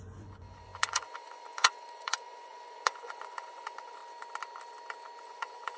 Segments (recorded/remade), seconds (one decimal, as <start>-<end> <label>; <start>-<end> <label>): 0.0-4.0 remade; 4.0-5.2 recorded; 5.2-5.8 remade